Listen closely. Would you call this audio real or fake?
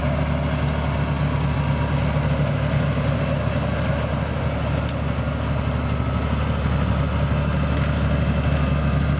real